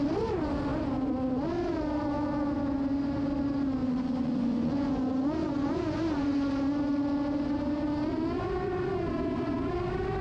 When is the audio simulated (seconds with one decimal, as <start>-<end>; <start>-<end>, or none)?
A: 3.8-5.0; 5.4-6.5